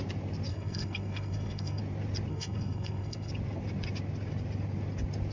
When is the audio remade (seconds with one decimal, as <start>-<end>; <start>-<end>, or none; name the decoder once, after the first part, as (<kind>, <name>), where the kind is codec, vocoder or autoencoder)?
0.5-1.8 (codec, SNAC); 2.3-3.3